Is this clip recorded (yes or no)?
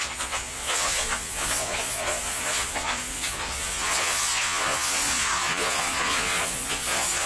no